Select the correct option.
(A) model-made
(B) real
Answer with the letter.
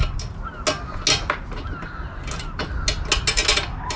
B